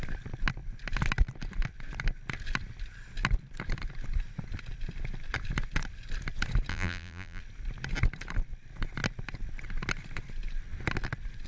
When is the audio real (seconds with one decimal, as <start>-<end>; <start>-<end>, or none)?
0.0-6.7; 7.4-11.5